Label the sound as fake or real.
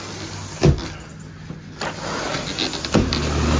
real